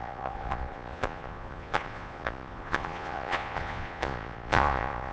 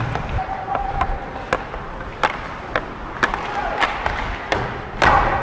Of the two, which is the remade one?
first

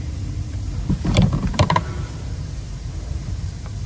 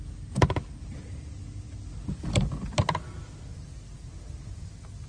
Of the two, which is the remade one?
first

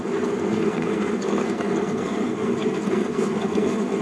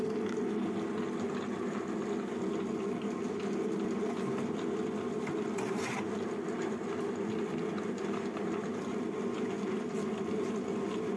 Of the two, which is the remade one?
first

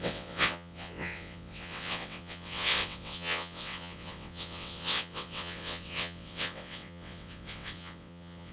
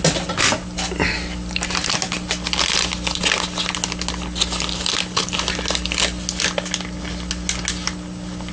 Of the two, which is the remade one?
first